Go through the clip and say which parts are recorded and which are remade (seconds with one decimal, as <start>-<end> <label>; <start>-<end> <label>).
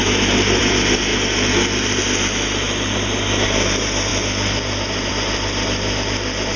0.0-6.6 recorded